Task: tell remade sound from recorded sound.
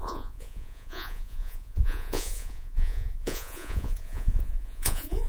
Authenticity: remade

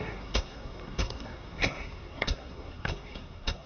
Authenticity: remade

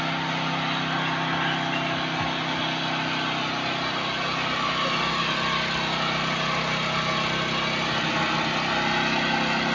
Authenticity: recorded